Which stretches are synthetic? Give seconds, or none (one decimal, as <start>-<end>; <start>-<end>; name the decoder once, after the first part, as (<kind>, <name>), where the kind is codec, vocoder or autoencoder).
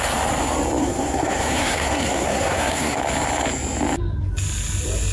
0.8-3.0 (codec, SNAC)